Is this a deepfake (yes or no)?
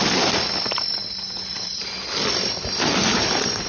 yes